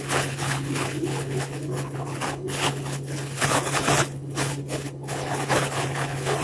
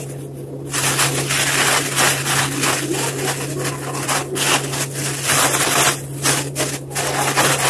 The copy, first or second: first